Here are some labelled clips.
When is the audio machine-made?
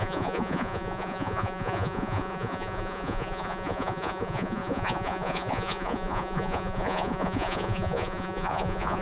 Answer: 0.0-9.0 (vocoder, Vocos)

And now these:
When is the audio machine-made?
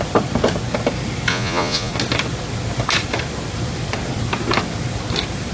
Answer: 1.3-1.9 (vocoder, Vocos)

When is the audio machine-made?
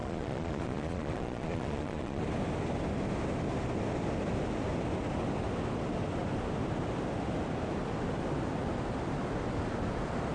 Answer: 0.0-2.2 (vocoder, Vocos)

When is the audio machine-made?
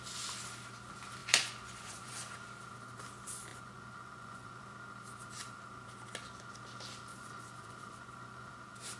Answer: 1.2-2.1 (vocoder, Vocos); 3.5-4.6; 7.1-8.5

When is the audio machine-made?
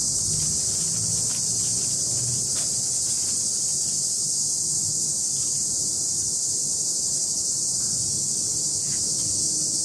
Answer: 7.5-8.1 (vocoder, Vocos)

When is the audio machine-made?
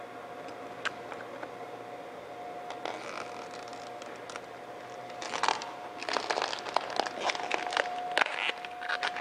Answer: none